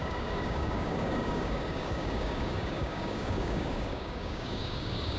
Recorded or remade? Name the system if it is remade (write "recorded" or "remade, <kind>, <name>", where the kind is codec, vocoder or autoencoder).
remade, codec, DAC